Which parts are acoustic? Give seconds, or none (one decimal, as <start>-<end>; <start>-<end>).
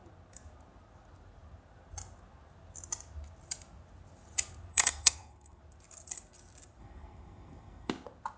0.0-4.7; 5.6-6.8; 7.9-8.4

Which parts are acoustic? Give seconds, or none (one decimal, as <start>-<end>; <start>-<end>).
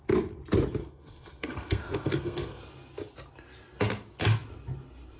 0.0-0.8; 2.6-5.2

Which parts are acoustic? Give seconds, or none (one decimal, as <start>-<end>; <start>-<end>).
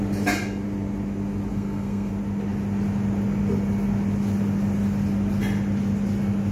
0.0-1.5; 2.1-6.5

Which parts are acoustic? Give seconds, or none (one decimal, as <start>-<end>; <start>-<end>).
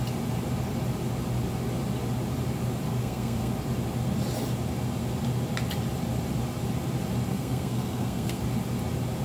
0.0-3.0; 3.5-7.3; 8.4-9.2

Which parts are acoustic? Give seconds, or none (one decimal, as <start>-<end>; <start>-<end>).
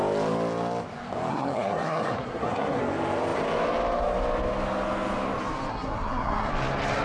0.0-1.3; 2.8-5.7; 6.5-7.0